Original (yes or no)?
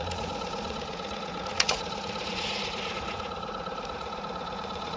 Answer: no